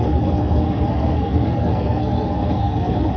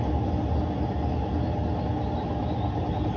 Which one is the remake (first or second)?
first